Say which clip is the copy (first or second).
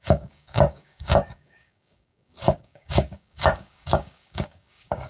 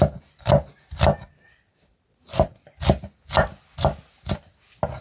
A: first